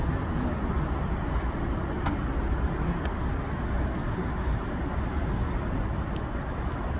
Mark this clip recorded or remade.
recorded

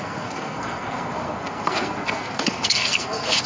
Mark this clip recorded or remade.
remade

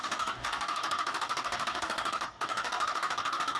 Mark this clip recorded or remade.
remade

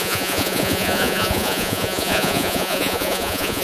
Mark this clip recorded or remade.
remade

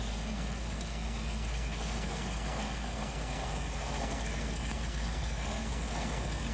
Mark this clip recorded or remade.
remade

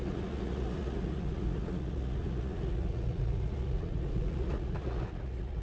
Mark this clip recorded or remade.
remade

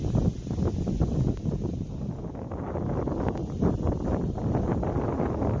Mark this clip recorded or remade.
recorded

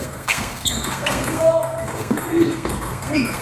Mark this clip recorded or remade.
remade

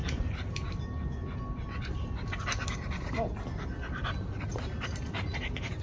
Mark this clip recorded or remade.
recorded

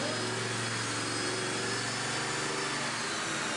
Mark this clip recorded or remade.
recorded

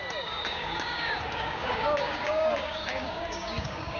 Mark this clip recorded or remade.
remade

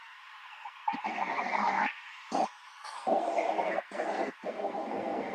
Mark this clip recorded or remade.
remade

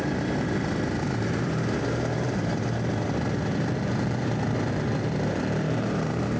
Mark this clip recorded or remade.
remade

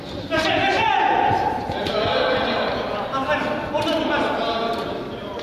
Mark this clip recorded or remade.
recorded